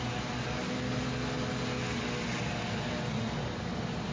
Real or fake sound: real